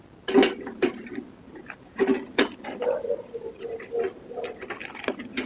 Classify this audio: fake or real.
real